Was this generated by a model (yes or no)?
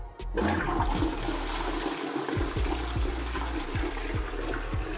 no